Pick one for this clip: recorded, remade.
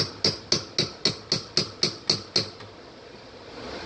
recorded